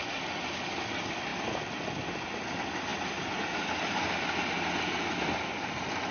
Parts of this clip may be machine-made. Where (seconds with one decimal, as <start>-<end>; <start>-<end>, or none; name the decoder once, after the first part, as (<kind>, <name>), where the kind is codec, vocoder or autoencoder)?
none